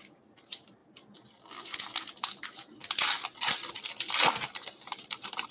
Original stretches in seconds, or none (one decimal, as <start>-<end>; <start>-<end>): 0.8-1.9; 2.8-4.5